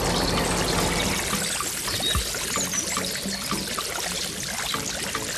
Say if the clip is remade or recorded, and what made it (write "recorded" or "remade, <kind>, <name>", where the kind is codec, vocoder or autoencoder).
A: recorded